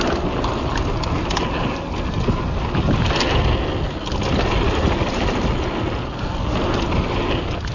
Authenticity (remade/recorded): recorded